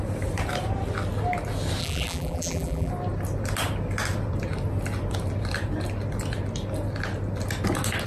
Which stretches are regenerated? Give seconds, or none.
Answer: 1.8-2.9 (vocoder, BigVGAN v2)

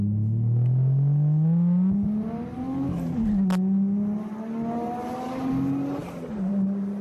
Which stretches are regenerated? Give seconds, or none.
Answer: none

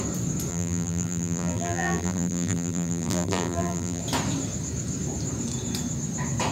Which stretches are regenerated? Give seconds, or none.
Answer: 0.5-4.0 (vocoder, BigVGAN v2)

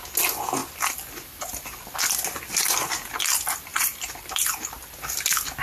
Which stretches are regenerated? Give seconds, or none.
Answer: 3.7-4.7 (vocoder, BigVGAN v2)

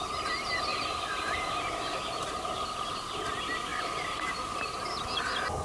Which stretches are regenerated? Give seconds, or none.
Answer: 0.7-2.7 (vocoder, BigVGAN v2); 3.7-4.6

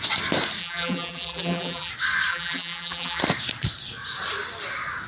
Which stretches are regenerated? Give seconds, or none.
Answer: 0.6-1.9 (vocoder, BigVGAN v2); 2.3-3.2

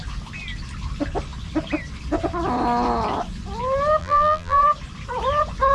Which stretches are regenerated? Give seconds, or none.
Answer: 4.0-4.6 (vocoder, BigVGAN v2)

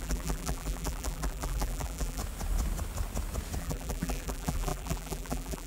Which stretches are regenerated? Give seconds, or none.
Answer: 0.0-2.2 (vocoder, BigVGAN v2); 3.6-5.7